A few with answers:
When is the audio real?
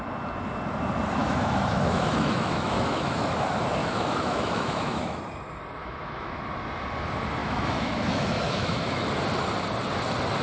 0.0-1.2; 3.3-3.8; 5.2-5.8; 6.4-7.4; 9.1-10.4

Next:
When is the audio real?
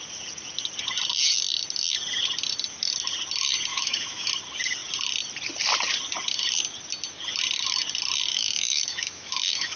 0.0-3.7; 4.3-8.3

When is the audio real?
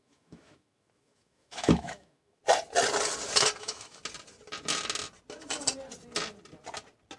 2.4-3.6; 4.0-7.2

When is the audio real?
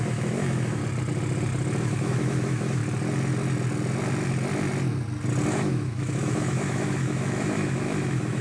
0.8-1.8; 2.8-5.5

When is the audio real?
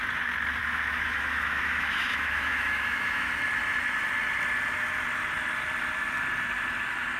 0.0-0.6; 3.3-7.2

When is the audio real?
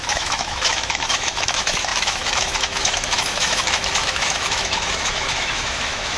none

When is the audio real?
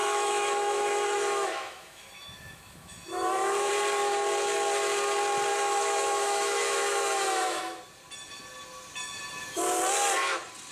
3.7-5.5; 7.8-10.7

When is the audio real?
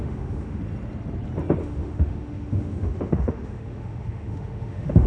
0.6-1.6